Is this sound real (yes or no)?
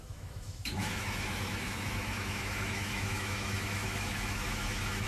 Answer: no